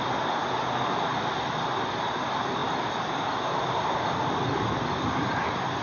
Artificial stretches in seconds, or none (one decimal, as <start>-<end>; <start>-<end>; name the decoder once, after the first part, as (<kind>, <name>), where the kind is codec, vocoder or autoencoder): none